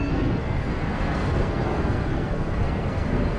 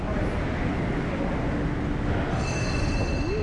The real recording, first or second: second